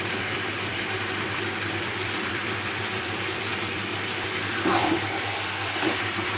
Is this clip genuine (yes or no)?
no